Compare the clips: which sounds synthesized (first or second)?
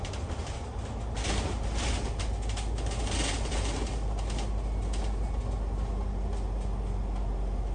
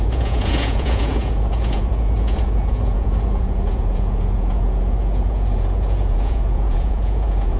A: second